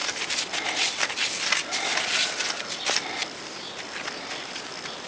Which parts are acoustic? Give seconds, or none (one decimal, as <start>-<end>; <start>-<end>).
0.0-5.1